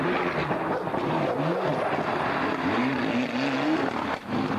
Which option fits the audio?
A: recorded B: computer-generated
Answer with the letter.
A